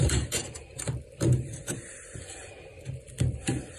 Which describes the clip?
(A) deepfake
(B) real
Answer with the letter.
A